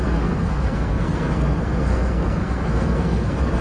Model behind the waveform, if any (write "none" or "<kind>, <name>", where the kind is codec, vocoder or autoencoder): codec, SNAC